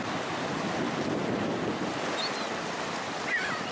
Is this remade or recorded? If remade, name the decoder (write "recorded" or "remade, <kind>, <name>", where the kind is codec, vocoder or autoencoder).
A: recorded